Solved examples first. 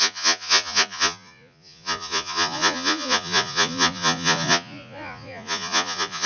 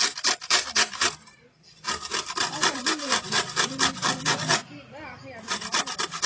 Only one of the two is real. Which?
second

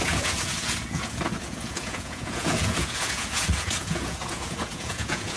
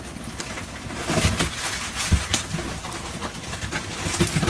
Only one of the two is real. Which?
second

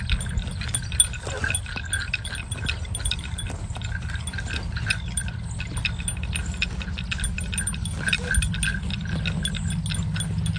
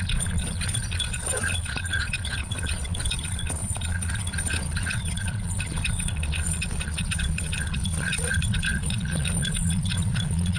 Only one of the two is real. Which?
first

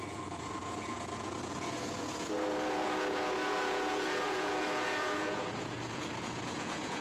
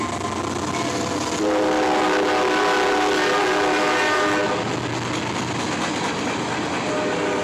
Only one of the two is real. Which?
second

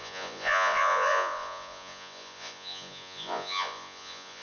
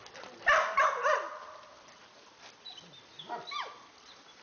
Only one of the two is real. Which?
second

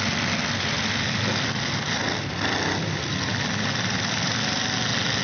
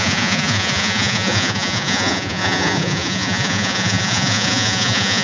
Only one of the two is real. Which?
first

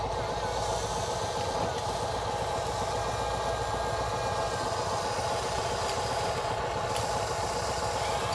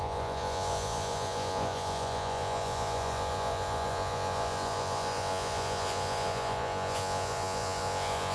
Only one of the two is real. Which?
first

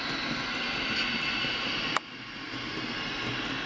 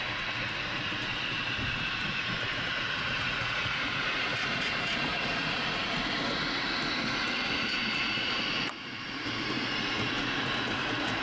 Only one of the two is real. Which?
first